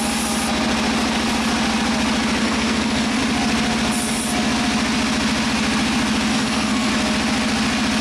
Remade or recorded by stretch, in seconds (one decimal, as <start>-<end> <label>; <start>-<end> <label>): 0.0-2.4 recorded; 2.4-3.2 remade; 3.2-6.3 recorded; 6.3-6.9 remade; 6.9-8.0 recorded